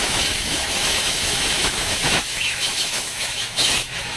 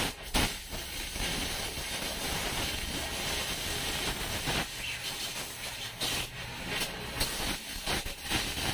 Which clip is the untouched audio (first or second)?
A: second